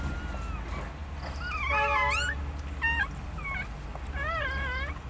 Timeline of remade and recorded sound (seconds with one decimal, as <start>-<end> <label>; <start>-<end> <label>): 0.0-5.1 recorded